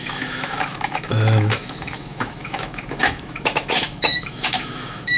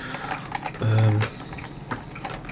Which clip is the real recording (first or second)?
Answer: second